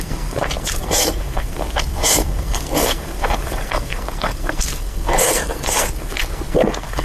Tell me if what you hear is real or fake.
fake